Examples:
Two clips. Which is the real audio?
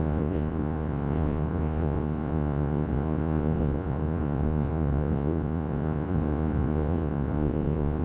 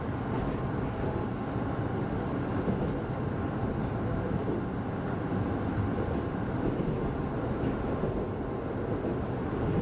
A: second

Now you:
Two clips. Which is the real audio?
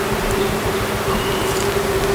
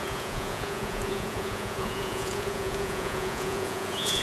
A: first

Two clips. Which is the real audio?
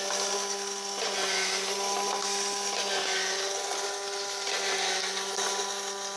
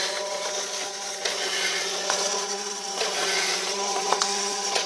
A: first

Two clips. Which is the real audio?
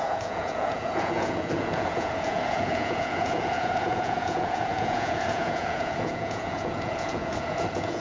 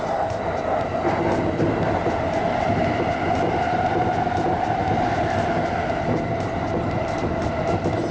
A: second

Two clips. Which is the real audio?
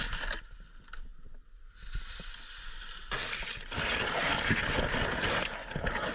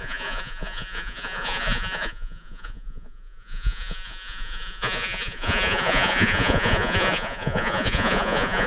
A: first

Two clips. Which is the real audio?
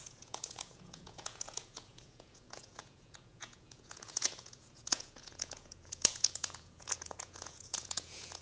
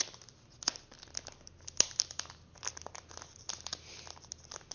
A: second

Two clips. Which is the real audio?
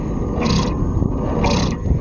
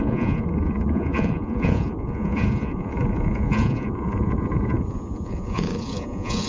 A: first